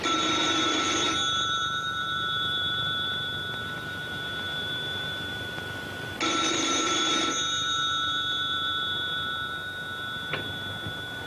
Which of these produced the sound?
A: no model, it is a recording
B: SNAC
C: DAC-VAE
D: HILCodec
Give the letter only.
A